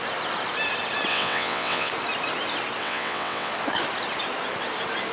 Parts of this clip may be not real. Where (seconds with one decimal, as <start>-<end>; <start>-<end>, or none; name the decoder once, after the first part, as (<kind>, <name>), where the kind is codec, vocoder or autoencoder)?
1.1-1.9 (vocoder, WaveNeXt); 2.8-3.5